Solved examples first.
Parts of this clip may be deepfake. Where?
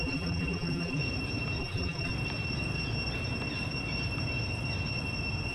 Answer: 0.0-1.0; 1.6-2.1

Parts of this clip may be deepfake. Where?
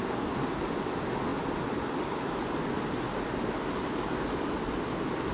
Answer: none